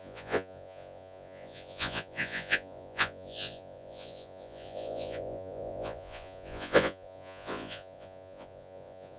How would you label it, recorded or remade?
remade